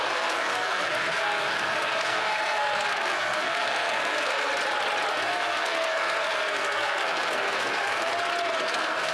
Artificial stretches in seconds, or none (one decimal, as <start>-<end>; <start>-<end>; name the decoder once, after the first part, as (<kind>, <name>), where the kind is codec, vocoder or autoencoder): 0.0-4.5 (codec, SNAC); 5.1-8.1; 8.6-9.1